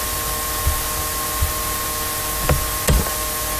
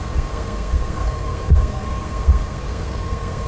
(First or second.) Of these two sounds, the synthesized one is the second